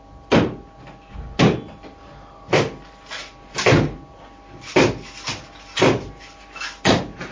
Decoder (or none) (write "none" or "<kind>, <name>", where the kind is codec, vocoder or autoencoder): none